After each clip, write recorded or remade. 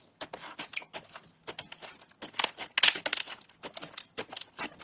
recorded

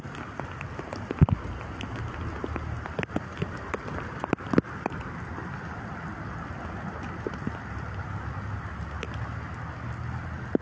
recorded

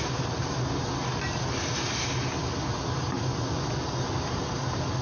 recorded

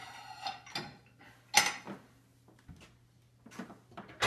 recorded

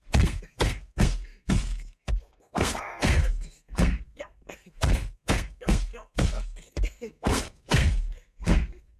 remade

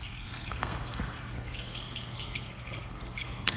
remade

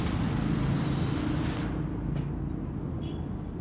recorded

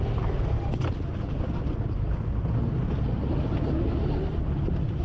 recorded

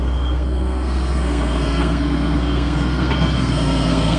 remade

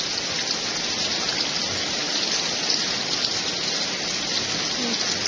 recorded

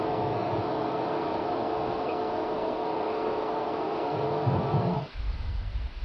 remade